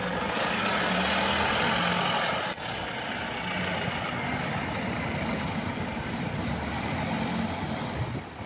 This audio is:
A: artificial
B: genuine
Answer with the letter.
B